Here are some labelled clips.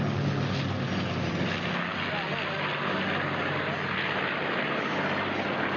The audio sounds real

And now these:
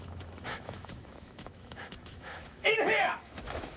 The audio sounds fake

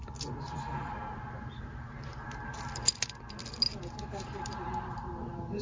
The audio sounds real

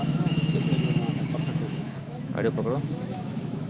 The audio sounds fake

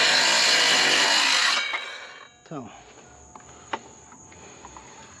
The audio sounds real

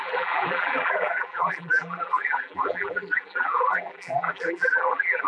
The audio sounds fake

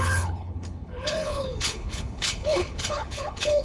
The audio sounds fake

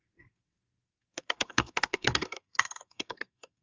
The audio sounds fake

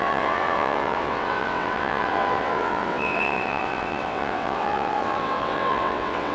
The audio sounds fake